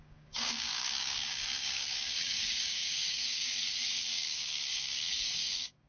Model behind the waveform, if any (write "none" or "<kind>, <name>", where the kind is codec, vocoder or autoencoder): codec, DAC